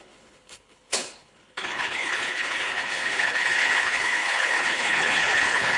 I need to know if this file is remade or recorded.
remade